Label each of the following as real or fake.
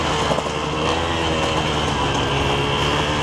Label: real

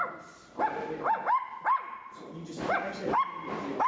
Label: real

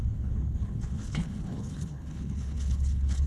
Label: fake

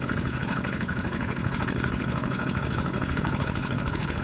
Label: fake